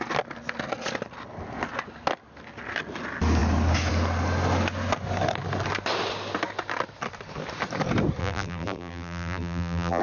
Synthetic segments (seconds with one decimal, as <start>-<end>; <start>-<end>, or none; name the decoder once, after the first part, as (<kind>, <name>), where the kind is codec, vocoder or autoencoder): 8.2-10.0 (vocoder, BigVGAN v2)